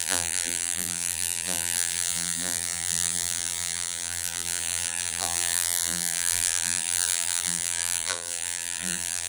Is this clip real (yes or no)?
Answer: no